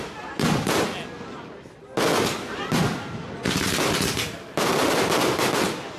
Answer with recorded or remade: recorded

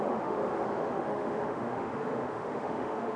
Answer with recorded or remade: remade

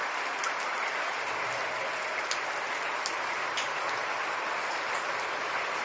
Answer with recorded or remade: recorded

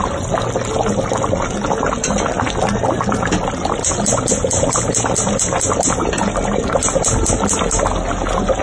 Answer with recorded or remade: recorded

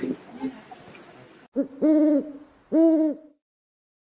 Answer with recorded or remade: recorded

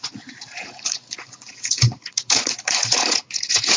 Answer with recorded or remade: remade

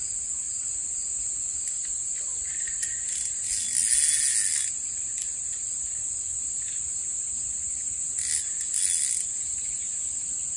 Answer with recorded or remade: recorded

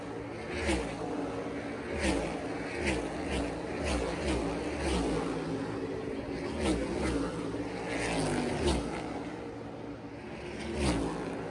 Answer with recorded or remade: recorded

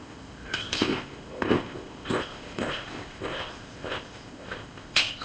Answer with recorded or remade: remade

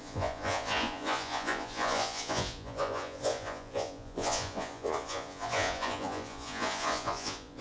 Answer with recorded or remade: remade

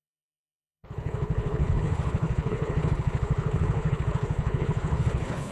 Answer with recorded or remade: remade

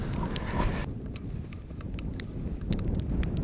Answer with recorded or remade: recorded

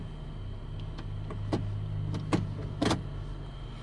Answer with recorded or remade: recorded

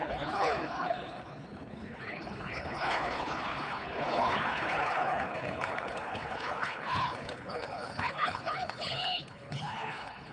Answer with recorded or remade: remade